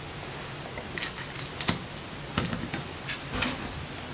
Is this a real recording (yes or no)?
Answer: yes